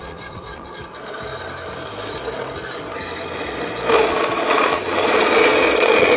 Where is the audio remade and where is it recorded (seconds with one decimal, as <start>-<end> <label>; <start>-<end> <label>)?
0.0-1.3 remade; 1.3-4.1 recorded; 4.1-6.2 remade